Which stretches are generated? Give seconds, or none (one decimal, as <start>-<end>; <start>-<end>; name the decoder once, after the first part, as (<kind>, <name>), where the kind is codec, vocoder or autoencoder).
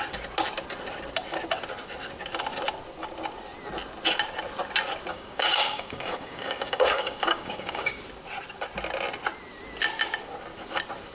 5.1-8.0 (codec, DAC)